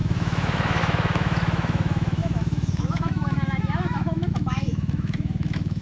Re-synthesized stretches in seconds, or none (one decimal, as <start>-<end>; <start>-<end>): 0.0-5.8